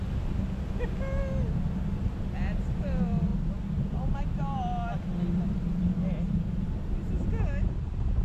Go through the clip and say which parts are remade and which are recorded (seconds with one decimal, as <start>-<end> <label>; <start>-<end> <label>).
0.0-8.2 recorded